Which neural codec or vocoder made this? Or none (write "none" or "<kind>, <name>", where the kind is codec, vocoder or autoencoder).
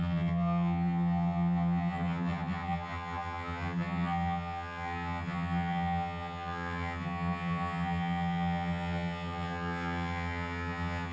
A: vocoder, HiFi-GAN